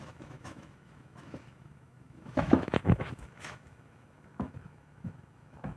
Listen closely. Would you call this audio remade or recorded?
remade